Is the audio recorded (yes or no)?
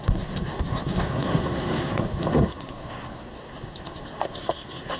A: no